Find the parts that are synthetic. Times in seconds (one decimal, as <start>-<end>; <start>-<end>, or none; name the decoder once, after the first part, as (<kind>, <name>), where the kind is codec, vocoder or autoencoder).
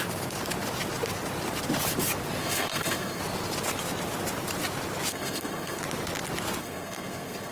2.4-3.2 (codec, SNAC); 5.1-5.8; 6.6-7.5